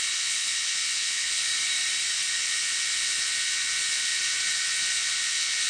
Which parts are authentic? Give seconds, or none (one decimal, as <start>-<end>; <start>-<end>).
1.5-2.3